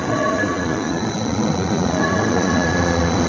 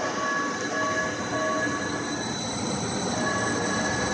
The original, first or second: second